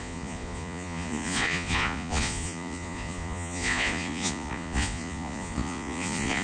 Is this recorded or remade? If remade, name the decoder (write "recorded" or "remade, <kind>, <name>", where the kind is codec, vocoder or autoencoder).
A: remade, vocoder, Vocos